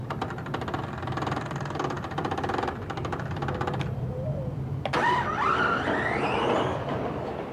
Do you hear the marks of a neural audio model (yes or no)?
no